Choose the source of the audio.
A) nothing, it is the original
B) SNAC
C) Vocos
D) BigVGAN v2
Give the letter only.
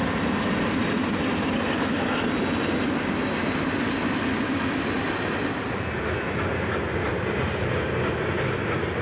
A